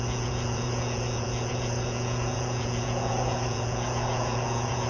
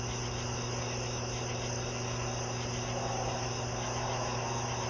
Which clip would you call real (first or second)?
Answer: second